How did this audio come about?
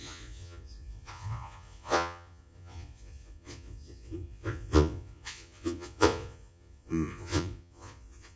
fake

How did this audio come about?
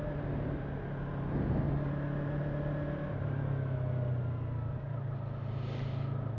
real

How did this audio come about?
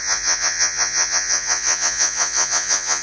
fake